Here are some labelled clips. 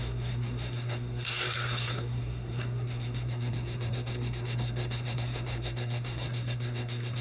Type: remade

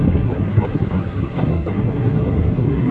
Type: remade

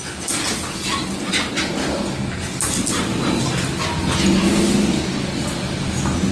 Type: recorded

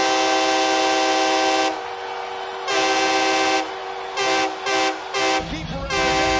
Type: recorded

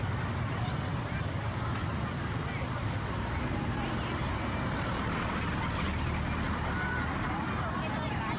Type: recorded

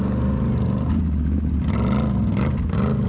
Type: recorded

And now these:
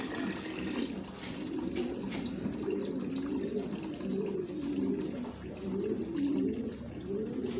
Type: recorded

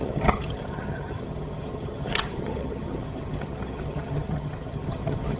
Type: remade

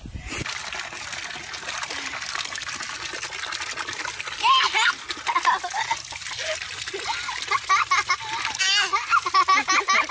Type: recorded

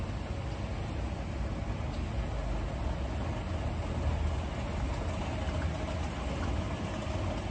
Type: recorded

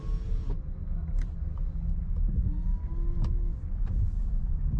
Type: recorded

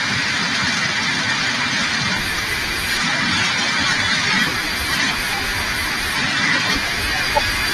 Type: recorded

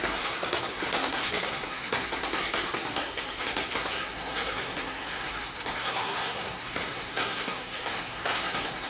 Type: remade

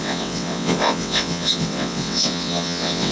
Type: remade